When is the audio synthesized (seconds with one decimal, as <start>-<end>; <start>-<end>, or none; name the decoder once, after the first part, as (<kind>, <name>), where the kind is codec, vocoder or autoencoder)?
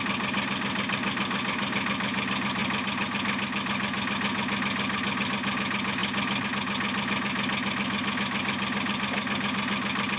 none